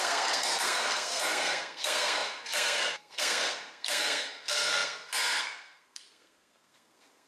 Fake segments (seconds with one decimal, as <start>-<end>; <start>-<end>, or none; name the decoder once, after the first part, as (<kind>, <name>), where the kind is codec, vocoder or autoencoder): 0.0-7.3 (codec, SNAC)